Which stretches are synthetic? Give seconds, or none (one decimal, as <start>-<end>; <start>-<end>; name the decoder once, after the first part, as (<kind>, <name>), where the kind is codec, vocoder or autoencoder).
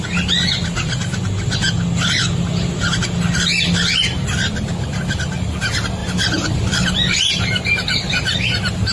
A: 6.0-7.3 (vocoder, BigVGAN v2)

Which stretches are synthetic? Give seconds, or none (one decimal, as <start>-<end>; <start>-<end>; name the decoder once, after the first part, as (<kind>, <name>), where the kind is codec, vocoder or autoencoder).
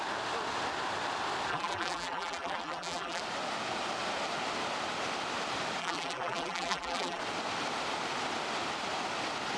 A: 1.5-3.2 (vocoder, BigVGAN v2); 5.8-7.2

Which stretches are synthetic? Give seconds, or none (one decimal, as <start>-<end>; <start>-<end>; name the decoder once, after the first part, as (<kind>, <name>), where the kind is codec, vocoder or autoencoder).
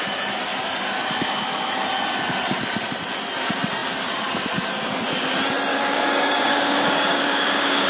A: 5.7-7.9 (codec, DAC)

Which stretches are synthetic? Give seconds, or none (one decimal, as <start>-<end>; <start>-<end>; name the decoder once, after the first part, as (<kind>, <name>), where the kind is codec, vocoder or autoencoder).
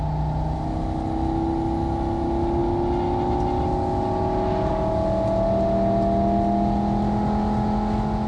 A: none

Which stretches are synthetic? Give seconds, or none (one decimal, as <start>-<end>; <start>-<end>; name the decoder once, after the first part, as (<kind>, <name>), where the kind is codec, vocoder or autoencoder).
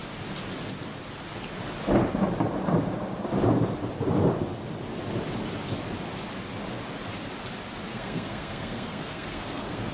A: 7.9-9.9 (codec, SNAC)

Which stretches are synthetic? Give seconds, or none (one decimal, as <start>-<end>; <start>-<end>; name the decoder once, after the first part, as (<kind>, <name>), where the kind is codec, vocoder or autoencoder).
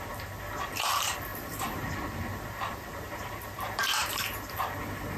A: 1.3-4.4 (vocoder, BigVGAN v2)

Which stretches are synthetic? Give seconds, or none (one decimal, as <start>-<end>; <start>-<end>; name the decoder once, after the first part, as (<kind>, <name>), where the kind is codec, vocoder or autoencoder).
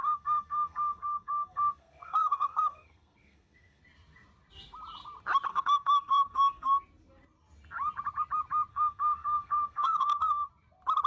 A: 0.0-3.8 (codec, SNAC); 5.5-6.8; 8.7-10.5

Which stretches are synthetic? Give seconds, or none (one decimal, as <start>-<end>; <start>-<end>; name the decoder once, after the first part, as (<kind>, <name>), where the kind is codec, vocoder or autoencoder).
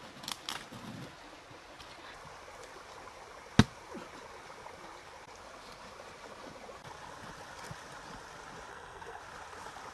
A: 8.7-9.2 (codec, SNAC)